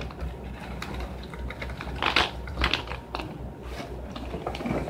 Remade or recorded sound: recorded